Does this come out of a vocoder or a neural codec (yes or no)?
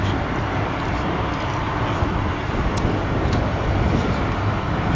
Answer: no